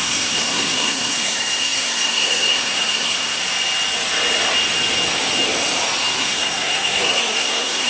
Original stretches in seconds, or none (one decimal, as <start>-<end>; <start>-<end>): 3.4-6.2